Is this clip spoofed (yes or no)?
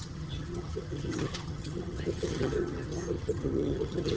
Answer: yes